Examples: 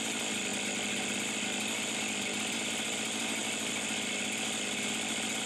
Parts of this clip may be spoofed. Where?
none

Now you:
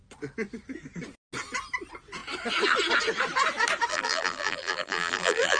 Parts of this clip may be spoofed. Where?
3.9-5.6 (vocoder, BigVGAN v2)

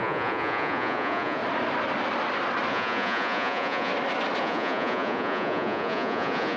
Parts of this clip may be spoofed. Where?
0.0-1.4 (vocoder, Vocos); 2.7-3.9; 4.4-6.6

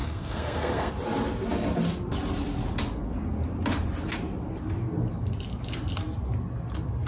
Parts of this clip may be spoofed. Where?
0.0-0.9 (codec, SNAC)

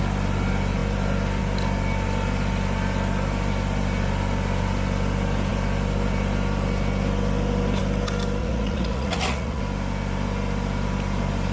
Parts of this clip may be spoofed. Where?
8.4-9.6 (vocoder, Vocos)

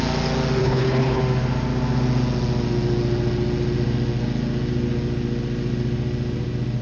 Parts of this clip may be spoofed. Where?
0.6-1.2 (codec, HILCodec)

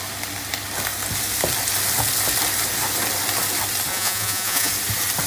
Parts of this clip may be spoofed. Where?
3.9-4.7 (vocoder, Vocos)